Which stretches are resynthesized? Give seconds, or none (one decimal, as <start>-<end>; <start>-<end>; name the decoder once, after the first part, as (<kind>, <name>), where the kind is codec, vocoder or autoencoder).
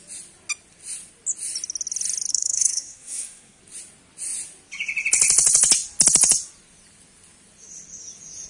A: 2.3-3.6 (codec, SNAC)